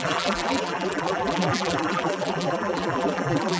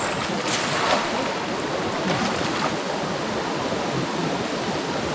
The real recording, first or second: second